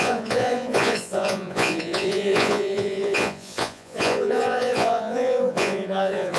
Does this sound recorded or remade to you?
remade